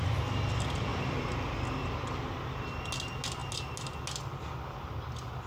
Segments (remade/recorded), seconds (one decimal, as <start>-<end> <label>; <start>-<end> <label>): 0.0-5.5 recorded